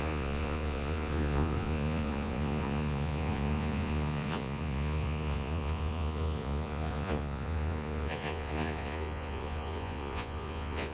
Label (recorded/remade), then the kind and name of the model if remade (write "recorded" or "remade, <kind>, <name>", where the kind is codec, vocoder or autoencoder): remade, vocoder, Vocos